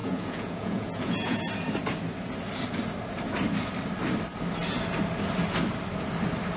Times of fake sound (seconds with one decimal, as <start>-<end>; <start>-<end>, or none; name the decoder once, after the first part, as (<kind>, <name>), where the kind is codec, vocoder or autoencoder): 0.0-1.5 (vocoder, Vocos)